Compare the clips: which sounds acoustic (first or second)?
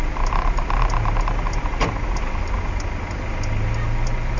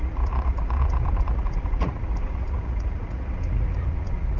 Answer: first